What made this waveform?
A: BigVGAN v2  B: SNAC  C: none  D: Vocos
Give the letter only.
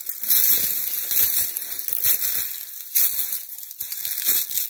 C